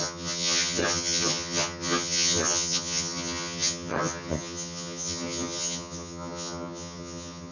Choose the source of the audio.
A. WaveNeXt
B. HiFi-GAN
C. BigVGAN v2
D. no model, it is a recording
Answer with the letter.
B